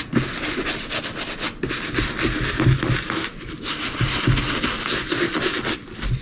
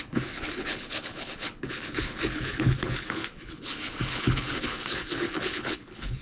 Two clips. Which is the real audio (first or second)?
first